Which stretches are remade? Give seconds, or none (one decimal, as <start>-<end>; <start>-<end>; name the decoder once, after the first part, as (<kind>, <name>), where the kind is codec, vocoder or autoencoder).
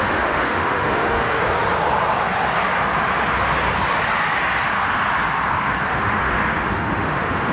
0.0-1.4 (autoencoder, DAC-VAE); 5.9-7.5